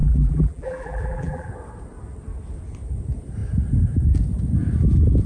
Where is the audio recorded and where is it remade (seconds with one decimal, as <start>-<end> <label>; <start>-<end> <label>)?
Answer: 0.0-1.5 remade; 1.5-5.3 recorded